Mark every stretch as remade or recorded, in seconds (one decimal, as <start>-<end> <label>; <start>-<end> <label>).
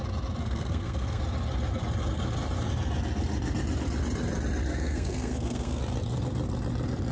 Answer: 0.0-0.4 recorded; 0.4-1.2 remade; 1.2-4.7 recorded; 4.7-5.8 remade; 5.8-7.1 recorded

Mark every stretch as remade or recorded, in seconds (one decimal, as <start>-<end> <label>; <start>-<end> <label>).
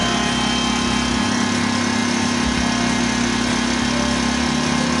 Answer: 0.0-5.0 recorded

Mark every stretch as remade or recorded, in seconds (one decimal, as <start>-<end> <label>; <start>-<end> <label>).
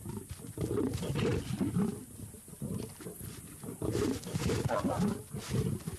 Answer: 0.0-6.0 recorded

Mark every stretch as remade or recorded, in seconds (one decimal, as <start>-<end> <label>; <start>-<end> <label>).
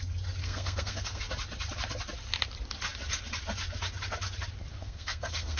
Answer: 0.0-0.4 recorded; 0.4-1.2 remade; 1.2-4.8 recorded; 4.8-5.6 remade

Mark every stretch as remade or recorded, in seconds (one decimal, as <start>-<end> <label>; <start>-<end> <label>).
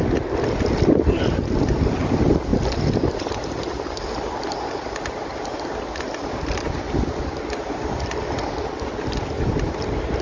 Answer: 0.0-10.2 recorded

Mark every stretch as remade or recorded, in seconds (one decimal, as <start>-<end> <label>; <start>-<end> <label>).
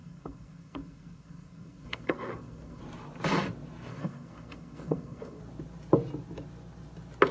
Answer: 0.0-2.8 remade; 2.8-3.9 recorded; 3.9-5.4 remade; 5.4-7.3 recorded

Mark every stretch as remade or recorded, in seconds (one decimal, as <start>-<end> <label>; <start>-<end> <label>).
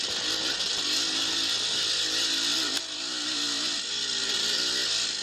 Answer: 0.0-5.2 recorded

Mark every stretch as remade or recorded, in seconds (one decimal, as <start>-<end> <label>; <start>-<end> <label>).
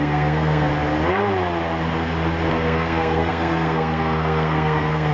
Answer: 0.0-0.7 remade; 0.7-2.5 recorded; 2.5-5.1 remade